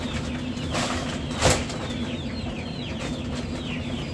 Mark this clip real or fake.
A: real